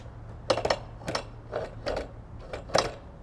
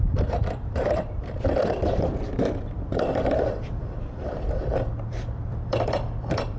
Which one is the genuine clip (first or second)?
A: first